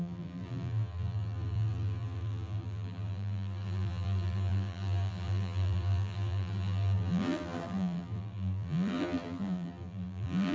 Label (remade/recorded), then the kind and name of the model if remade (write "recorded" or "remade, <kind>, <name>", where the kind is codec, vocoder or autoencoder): remade, vocoder, BigVGAN v2